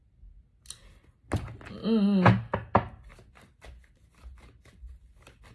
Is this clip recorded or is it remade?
recorded